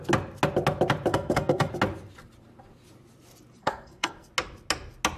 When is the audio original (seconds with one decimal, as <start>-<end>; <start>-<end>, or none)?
0.0-1.1; 1.7-3.6; 4.3-5.2